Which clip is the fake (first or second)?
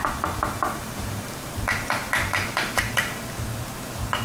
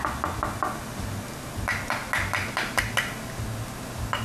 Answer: first